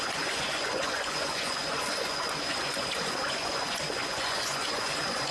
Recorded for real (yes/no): no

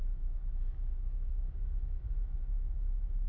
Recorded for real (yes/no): no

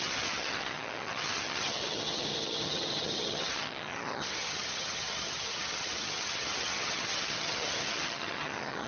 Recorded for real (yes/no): no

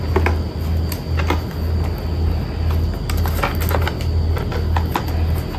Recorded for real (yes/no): yes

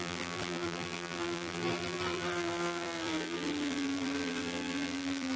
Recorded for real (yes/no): no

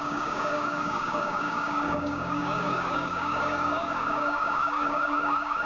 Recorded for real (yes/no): no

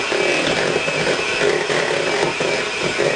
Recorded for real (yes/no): yes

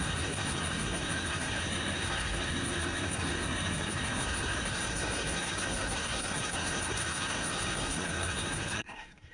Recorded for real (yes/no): no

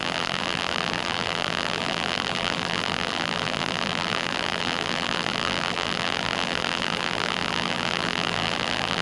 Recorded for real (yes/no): no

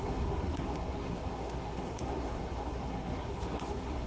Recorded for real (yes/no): no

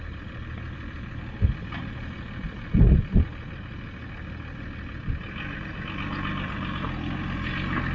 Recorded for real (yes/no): yes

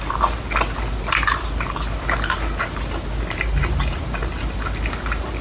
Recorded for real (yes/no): yes